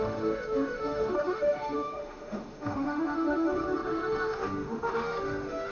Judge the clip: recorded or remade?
remade